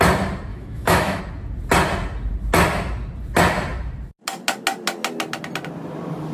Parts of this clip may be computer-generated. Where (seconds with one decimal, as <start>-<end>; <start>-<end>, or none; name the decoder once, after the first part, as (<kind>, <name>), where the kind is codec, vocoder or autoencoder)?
0.5-1.2 (autoencoder, DAC-VAE)